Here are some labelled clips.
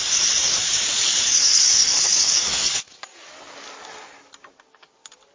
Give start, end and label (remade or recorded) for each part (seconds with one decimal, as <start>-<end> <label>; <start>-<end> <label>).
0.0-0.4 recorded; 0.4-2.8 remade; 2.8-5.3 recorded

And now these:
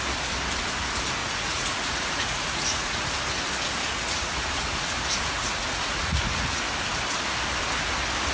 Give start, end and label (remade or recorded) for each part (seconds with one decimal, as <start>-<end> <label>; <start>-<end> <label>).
0.0-1.2 recorded; 1.2-3.1 remade; 3.1-3.8 recorded; 3.8-6.6 remade; 6.6-8.3 recorded

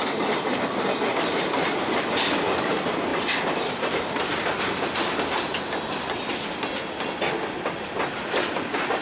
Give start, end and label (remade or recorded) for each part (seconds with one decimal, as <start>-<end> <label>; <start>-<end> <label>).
0.0-9.0 recorded

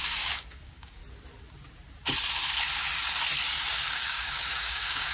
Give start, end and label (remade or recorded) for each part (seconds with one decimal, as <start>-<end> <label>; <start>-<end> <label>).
0.0-1.0 remade; 1.0-3.7 recorded; 3.7-5.1 remade

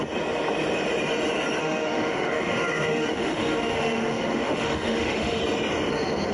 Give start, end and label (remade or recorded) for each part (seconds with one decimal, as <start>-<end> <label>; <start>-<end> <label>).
0.0-1.6 recorded; 1.6-5.4 remade; 5.4-6.3 recorded